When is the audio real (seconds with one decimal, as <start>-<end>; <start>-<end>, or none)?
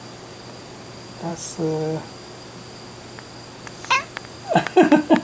0.0-5.2